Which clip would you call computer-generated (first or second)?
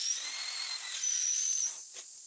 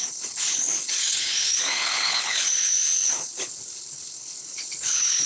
second